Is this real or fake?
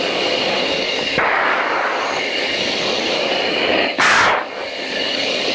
fake